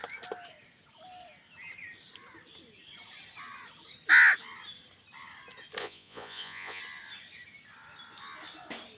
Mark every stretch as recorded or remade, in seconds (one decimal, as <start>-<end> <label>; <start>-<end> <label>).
0.0-5.8 recorded; 5.8-6.8 remade; 6.8-9.0 recorded

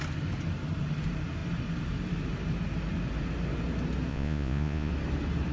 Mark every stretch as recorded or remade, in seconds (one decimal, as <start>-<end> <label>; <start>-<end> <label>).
0.0-4.1 recorded; 4.1-4.9 remade; 4.9-5.5 recorded

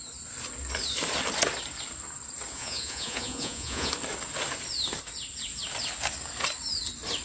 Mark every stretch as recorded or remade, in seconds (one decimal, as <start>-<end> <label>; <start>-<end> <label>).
0.0-2.5 recorded; 2.5-3.9 remade; 3.9-7.2 recorded

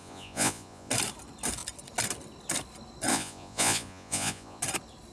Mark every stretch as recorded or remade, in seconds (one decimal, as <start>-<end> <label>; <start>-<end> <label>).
0.0-0.9 remade; 0.9-3.1 recorded; 3.1-4.6 remade; 4.6-5.1 recorded

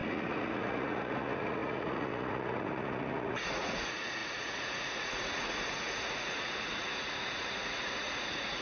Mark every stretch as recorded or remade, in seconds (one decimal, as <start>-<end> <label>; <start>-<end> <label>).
0.0-8.6 remade

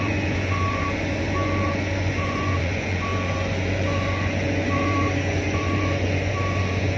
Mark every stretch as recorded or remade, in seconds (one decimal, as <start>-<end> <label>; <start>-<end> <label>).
0.0-7.0 remade

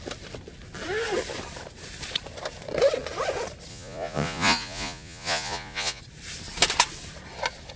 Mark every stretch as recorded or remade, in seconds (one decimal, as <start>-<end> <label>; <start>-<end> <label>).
0.0-3.7 recorded; 3.7-6.0 remade; 6.0-7.8 recorded